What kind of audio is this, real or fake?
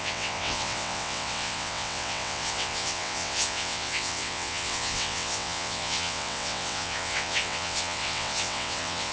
fake